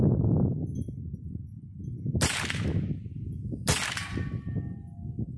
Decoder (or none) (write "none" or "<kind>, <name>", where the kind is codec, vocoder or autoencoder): none